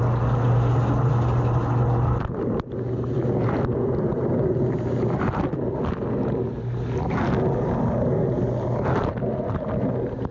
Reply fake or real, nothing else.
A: real